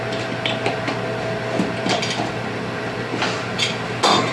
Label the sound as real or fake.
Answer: real